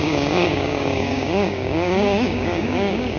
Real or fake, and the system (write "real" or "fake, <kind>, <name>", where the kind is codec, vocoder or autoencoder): fake, codec, DAC